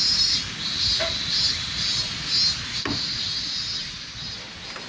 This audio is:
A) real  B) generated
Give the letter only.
A